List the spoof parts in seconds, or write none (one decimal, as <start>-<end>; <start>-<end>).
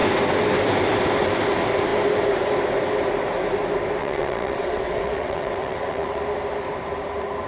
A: 4.0-6.2